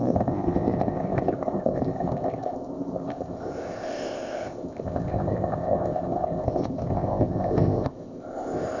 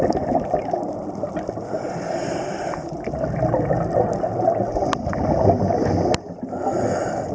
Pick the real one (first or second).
second